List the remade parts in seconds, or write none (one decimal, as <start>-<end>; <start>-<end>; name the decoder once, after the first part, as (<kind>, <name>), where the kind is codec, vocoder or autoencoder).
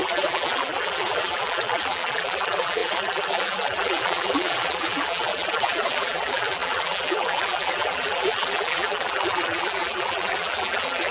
0.0-11.1 (vocoder, BigVGAN v2)